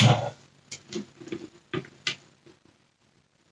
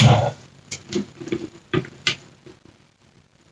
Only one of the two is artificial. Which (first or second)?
second